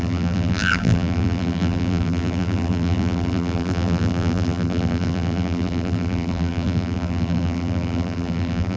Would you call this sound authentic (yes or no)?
no